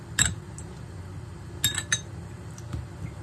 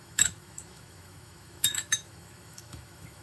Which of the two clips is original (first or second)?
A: first